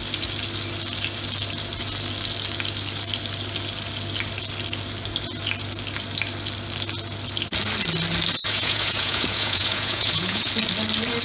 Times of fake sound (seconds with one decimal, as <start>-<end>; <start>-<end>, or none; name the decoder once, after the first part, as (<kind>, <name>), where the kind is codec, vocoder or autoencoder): 8.4-10.5 (vocoder, Vocos)